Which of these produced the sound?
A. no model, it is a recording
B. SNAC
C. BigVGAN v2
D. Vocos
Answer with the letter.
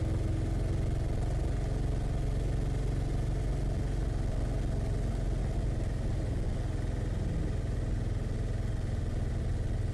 A